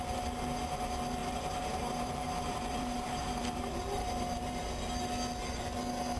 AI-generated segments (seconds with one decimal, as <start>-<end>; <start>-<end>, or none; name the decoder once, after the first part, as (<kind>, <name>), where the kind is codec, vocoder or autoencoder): 1.2-4.7 (vocoder, BigVGAN v2)